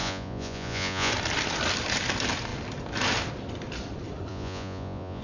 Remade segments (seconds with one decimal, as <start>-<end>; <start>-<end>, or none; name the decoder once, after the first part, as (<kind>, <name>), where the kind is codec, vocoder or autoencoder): 0.0-1.1 (vocoder, Vocos); 4.3-5.2